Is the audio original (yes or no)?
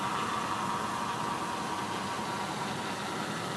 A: yes